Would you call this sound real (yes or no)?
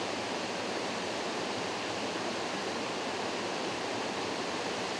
no